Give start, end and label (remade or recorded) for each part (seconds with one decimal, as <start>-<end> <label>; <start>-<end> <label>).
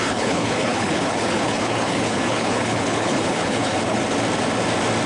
0.0-4.0 remade; 4.0-5.1 recorded